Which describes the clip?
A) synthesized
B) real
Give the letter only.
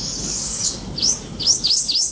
A